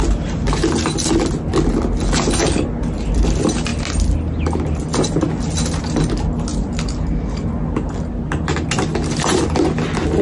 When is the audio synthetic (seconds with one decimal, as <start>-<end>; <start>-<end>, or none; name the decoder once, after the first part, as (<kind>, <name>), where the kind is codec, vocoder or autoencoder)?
none